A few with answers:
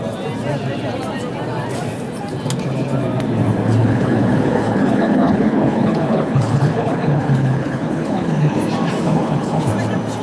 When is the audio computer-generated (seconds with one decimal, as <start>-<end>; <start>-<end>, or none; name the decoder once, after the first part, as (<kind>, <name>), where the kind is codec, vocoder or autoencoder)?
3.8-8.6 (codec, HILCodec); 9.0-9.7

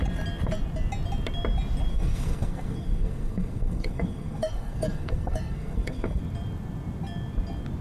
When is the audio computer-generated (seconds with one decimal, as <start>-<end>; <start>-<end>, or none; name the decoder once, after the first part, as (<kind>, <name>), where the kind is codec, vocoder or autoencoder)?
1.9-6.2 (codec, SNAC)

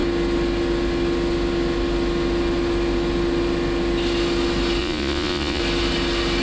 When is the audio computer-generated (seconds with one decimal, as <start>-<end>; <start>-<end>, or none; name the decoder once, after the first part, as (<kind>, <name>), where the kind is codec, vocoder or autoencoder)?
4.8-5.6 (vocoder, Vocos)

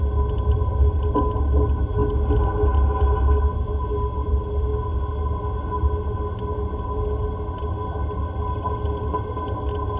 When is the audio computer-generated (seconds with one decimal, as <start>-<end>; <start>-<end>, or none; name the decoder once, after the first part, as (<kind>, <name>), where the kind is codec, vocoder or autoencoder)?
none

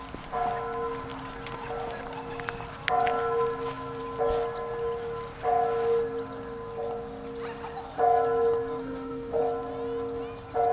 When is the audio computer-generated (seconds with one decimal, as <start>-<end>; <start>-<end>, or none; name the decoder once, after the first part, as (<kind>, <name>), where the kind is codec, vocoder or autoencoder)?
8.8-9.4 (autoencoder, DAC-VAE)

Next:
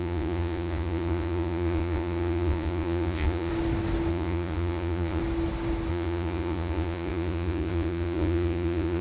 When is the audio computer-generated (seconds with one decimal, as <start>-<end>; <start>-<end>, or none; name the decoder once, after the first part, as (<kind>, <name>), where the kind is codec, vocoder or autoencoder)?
0.0-3.5 (vocoder, Vocos); 4.1-5.2; 5.9-9.0